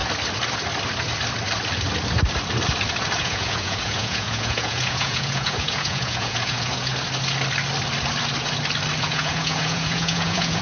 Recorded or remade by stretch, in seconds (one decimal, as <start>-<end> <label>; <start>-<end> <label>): 0.0-3.2 recorded; 3.2-6.9 remade; 6.9-9.0 recorded; 9.0-10.6 remade